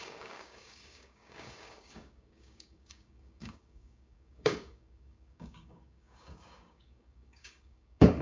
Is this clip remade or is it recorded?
remade